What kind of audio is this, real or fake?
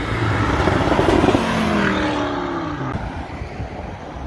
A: real